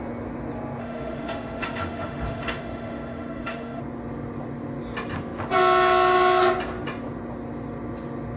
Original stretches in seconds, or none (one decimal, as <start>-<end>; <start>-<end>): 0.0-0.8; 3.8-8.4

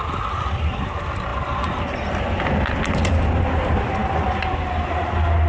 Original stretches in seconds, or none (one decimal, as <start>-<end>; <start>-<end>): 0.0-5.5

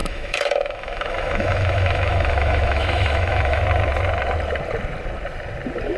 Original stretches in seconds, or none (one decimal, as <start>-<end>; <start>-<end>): 3.6-6.0

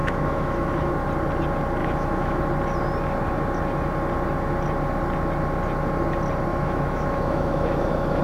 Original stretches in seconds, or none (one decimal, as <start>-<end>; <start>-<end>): 0.9-1.8; 2.4-6.5

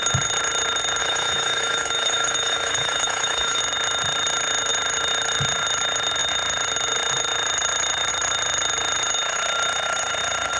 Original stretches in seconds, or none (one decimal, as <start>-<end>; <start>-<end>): 0.0-1.0; 3.6-10.6

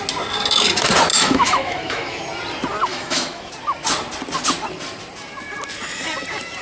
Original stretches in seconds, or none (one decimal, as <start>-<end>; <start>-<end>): 0.0-1.1; 2.2-2.9; 3.5-6.6